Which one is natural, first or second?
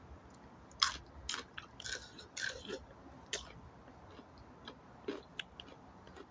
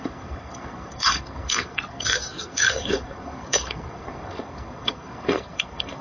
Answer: first